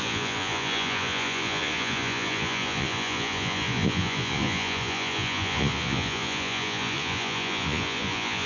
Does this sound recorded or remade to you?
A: remade